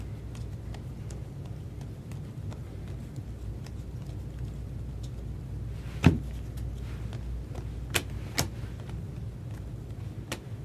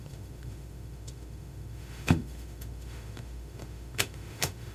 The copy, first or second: second